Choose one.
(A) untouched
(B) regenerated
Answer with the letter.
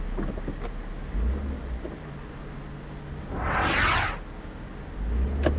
A